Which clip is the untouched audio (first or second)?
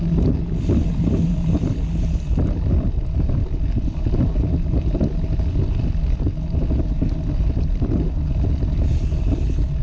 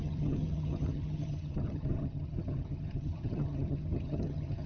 first